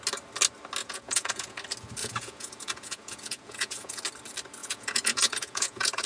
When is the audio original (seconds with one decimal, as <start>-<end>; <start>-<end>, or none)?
0.0-0.8; 1.6-2.0; 4.0-4.6